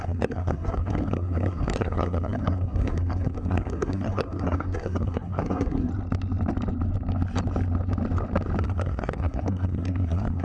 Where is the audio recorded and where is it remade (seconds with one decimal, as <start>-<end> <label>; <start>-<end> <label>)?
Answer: 0.0-5.9 remade; 5.9-8.6 recorded; 8.6-10.4 remade